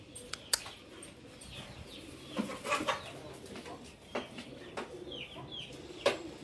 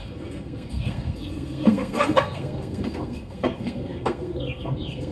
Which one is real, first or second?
first